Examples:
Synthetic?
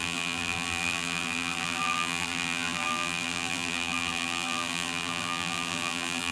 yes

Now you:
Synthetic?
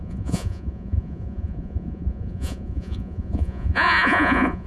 yes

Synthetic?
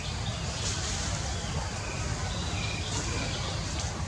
no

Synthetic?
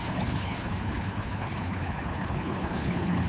yes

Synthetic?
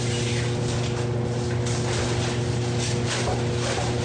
no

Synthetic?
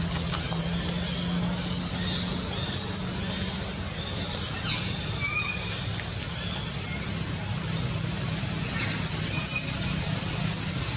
no